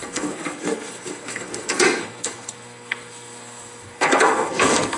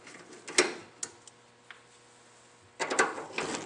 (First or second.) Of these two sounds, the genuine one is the second